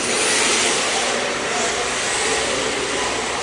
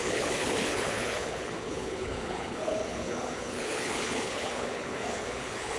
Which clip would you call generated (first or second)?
second